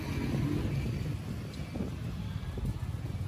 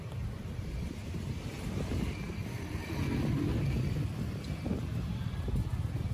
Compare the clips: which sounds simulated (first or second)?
second